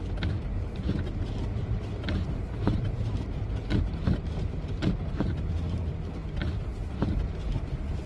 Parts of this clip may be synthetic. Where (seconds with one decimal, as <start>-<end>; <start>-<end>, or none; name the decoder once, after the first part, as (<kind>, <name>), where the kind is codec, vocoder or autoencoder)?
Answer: 0.5-5.4 (vocoder, BigVGAN v2)